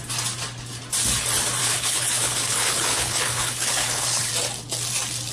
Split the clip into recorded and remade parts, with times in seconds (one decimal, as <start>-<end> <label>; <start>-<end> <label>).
0.0-1.6 recorded; 1.6-4.3 remade; 4.3-5.3 recorded